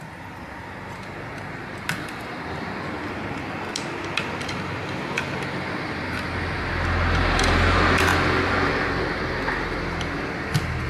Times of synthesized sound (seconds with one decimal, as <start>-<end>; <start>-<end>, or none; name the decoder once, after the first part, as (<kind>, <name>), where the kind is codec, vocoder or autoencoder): none